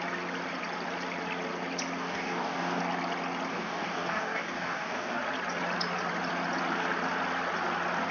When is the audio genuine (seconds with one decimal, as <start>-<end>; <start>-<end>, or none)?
0.0-2.0; 2.8-3.5; 5.2-8.1